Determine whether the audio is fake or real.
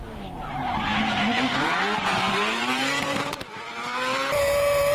fake